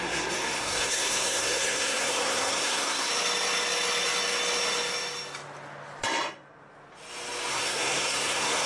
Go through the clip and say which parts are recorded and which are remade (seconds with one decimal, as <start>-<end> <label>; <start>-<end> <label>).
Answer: 0.0-3.1 remade; 3.1-7.5 recorded; 7.5-8.7 remade